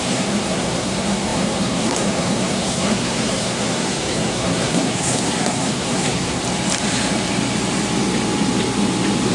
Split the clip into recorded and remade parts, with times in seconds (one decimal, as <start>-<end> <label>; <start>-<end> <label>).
0.0-6.4 remade; 6.4-9.3 recorded